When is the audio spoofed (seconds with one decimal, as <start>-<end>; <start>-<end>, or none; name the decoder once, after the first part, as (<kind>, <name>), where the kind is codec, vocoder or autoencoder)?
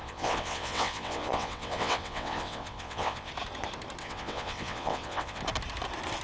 0.0-3.3 (vocoder, WaveNeXt); 4.0-5.4